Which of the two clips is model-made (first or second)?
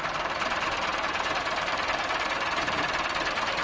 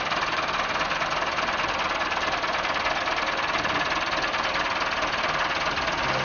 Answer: first